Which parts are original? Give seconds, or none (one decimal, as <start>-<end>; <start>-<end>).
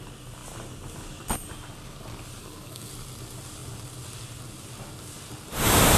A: 0.0-2.4; 2.9-6.0